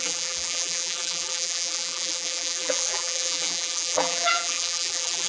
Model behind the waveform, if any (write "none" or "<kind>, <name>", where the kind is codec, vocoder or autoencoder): vocoder, BigVGAN v2